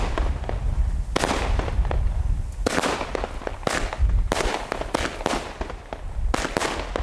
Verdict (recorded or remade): recorded